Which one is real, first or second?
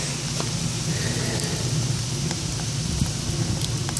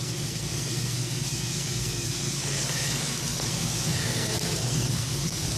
first